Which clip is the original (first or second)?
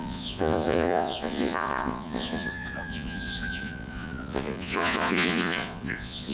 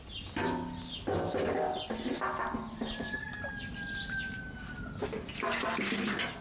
second